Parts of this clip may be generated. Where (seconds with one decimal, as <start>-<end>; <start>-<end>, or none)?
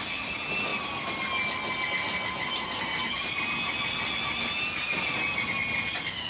none